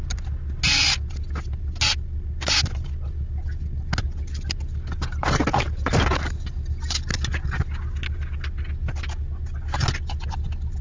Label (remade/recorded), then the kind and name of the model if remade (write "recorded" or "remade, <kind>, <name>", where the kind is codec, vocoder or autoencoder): recorded